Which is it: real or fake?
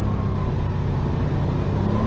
real